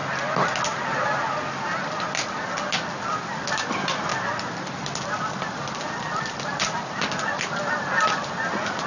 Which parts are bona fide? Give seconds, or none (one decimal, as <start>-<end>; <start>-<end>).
0.0-0.6; 4.1-5.9